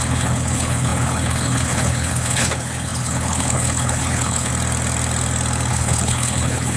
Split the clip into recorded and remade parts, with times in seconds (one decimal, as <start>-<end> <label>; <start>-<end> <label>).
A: 0.0-4.5 remade; 4.5-5.7 recorded; 5.7-6.8 remade